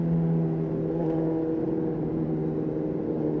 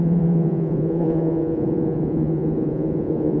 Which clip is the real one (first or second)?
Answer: first